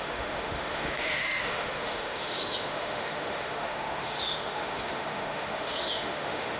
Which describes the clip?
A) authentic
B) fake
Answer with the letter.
B